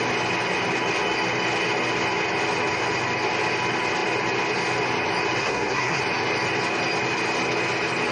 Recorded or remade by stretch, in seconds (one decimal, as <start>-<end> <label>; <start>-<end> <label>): 0.0-5.4 recorded; 5.4-6.0 remade; 6.0-8.1 recorded